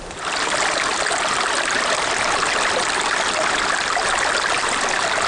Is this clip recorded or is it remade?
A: recorded